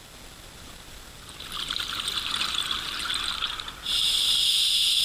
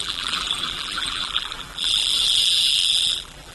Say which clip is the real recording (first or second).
first